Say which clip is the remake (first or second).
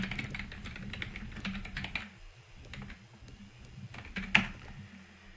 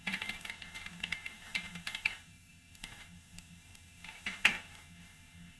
second